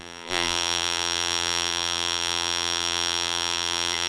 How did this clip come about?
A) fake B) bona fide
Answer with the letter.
A